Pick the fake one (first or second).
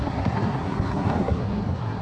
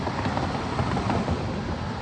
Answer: first